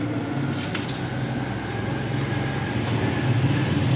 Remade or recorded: recorded